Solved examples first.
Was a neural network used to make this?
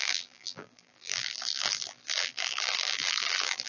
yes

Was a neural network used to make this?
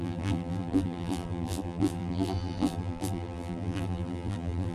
yes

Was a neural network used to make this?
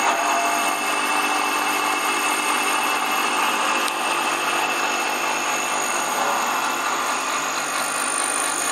no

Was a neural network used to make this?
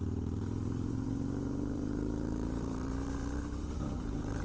yes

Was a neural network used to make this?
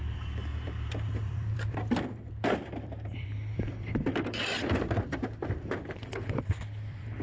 yes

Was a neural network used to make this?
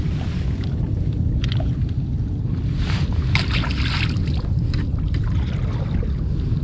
no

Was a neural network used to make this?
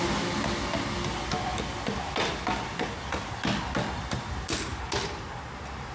no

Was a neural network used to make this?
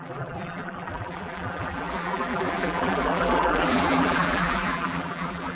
yes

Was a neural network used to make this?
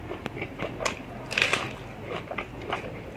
yes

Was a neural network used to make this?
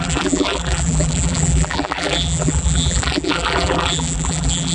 yes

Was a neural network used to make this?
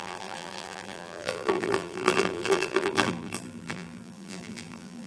yes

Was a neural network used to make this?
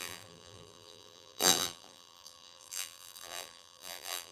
yes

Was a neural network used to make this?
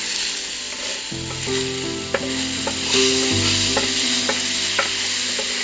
no